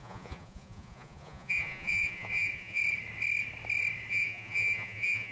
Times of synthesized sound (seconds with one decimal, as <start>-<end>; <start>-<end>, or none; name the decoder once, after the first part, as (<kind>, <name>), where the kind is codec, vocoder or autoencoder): 0.0-2.8 (vocoder, Vocos); 4.1-5.3